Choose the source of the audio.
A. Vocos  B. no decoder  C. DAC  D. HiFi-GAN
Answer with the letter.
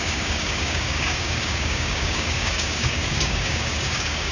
C